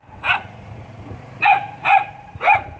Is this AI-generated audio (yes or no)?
yes